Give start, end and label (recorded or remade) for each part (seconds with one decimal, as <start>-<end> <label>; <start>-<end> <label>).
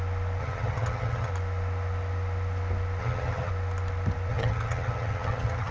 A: 0.0-0.4 recorded; 0.4-1.3 remade; 1.3-3.0 recorded; 3.0-3.5 remade; 3.5-4.3 recorded; 4.3-5.7 remade